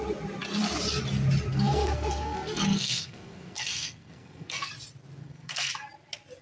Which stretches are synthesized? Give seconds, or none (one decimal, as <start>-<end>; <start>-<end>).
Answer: 1.5-4.7; 5.2-5.7